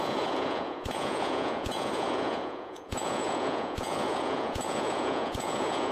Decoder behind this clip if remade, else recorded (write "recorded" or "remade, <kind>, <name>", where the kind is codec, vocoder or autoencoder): remade, vocoder, Vocos